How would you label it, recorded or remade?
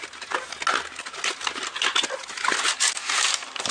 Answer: recorded